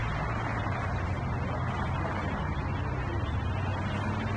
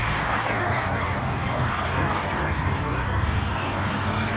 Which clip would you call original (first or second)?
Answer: first